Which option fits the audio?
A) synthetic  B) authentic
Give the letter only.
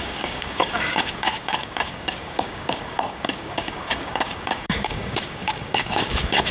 A